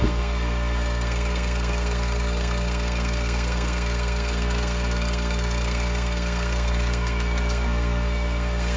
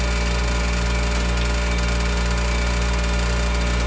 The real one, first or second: second